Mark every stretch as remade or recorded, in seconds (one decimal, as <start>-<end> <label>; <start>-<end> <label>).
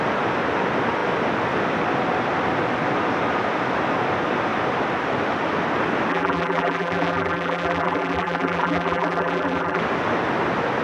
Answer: 0.0-6.1 recorded; 6.1-9.8 remade; 9.8-10.8 recorded